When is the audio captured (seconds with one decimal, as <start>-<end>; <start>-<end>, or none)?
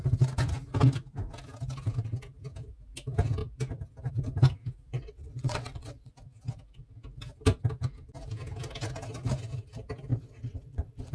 0.0-4.9; 6.1-10.1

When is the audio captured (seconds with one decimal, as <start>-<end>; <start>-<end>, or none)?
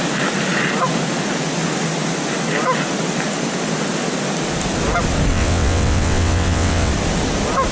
0.0-5.3; 6.9-7.7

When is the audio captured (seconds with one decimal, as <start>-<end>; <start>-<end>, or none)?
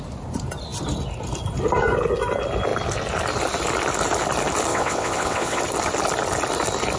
0.0-4.7; 5.6-7.0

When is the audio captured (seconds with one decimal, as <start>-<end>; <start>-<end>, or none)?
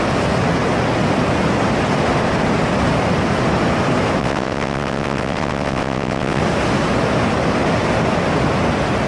0.0-4.2; 6.4-9.1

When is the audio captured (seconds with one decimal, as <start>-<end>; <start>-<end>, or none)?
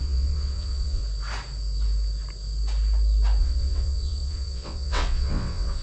1.0-3.4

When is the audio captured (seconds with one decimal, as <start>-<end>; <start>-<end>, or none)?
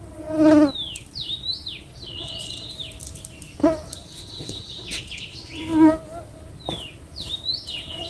0.0-1.9; 2.7-4.2; 5.6-8.1